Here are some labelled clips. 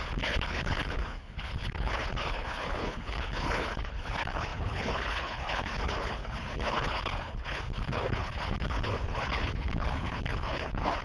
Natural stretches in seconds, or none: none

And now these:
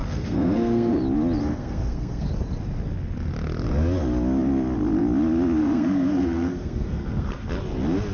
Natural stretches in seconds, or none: 0.9-1.4; 2.3-5.6; 7.5-8.1

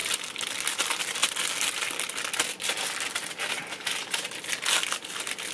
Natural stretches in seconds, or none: 0.0-5.5

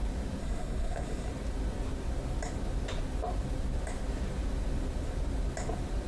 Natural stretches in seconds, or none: 0.0-0.4; 1.3-6.1

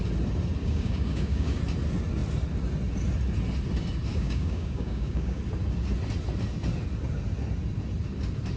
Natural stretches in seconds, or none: 0.0-0.6; 1.6-4.1; 5.4-8.6

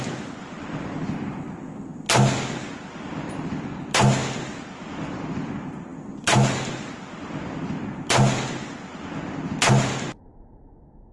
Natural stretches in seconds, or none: 0.0-11.1